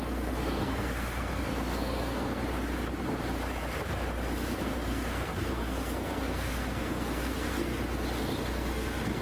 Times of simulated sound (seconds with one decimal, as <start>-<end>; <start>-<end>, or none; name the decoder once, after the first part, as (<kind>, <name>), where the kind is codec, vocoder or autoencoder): 0.0-2.4 (codec, SNAC); 4.6-7.7; 8.5-9.2